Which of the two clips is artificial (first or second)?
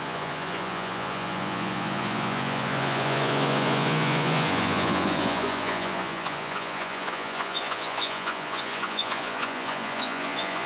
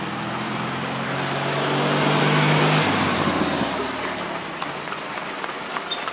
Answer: first